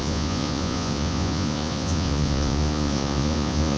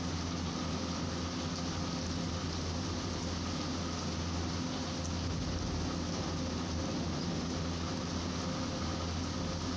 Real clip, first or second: second